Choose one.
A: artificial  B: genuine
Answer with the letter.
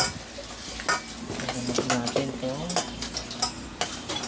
B